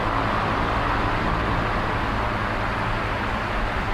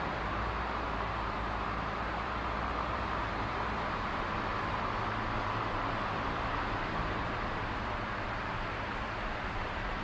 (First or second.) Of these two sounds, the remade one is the second